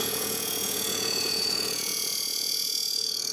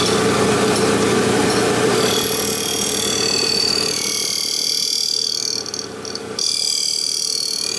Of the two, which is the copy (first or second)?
first